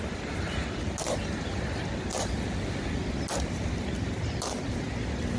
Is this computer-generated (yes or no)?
no